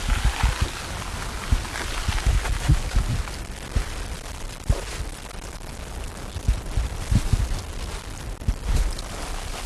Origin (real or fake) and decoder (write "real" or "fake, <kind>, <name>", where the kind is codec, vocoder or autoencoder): real